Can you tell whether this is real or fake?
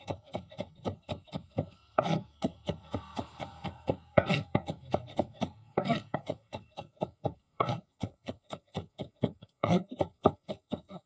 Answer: fake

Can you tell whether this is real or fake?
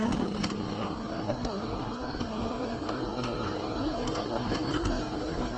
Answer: fake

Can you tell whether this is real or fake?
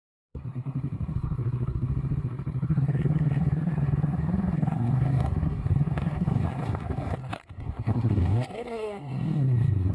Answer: fake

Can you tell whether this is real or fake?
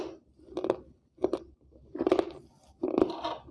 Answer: real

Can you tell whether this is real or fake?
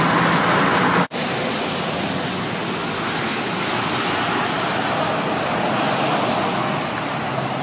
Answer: real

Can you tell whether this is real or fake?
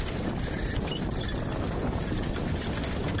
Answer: real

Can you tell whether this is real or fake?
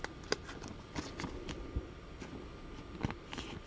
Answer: real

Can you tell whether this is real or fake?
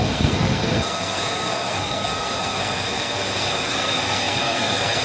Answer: fake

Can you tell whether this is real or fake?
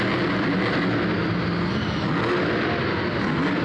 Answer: real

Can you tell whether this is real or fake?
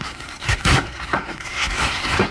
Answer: fake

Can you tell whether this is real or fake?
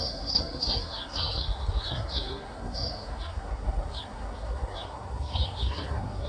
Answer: fake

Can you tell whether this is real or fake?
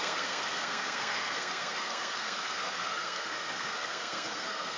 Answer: fake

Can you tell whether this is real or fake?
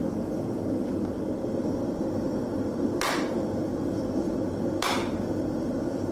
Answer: real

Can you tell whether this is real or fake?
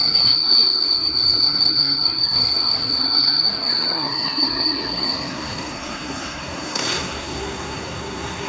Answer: fake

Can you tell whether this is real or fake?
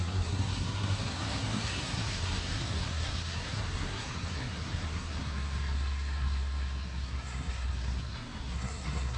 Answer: fake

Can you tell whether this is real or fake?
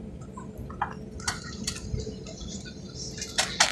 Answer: real